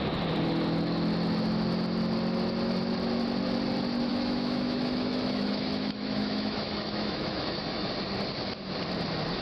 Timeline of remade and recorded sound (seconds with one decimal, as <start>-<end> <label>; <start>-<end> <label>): 0.0-4.1 recorded; 4.1-7.9 remade; 7.9-9.4 recorded